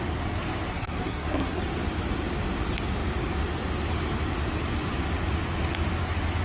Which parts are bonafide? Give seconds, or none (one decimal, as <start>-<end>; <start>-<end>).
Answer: 0.0-0.7; 1.6-6.4